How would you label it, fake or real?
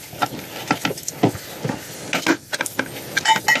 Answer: real